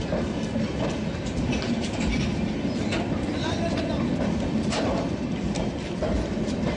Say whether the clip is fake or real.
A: real